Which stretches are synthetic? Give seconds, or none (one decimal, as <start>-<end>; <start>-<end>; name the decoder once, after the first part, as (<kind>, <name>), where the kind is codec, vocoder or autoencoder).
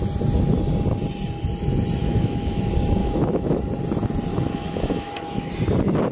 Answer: 2.0-2.6 (autoencoder, DAC-VAE); 3.0-3.6; 4.3-5.5